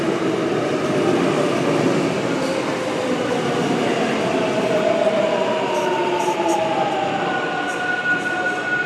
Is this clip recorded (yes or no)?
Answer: yes